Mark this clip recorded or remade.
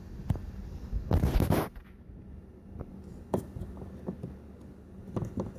recorded